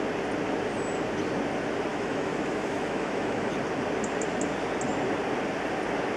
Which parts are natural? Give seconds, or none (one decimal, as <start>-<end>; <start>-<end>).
0.0-1.9; 3.5-6.2